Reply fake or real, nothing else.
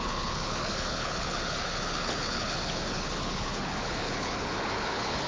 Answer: fake